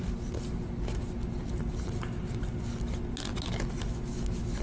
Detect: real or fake real